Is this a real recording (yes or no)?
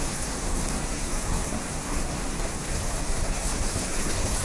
no